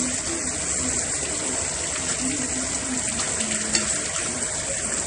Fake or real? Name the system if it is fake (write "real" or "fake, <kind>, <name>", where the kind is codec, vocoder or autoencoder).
real